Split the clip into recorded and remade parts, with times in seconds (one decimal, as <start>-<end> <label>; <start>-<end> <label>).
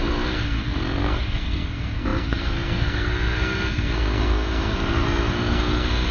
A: 0.0-6.1 remade